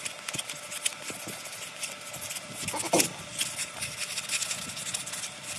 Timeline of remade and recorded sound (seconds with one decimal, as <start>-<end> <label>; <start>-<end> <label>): 0.0-5.6 recorded